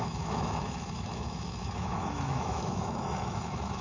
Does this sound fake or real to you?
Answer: fake